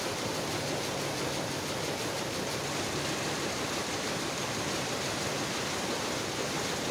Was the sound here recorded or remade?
remade